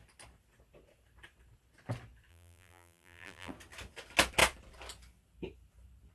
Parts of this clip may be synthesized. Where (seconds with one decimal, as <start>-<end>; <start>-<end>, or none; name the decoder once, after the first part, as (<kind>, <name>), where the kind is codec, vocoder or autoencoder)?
2.3-3.5 (vocoder, BigVGAN v2)